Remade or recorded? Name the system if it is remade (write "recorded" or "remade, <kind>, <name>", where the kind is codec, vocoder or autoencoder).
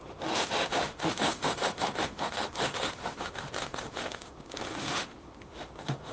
remade, autoencoder, DAC-VAE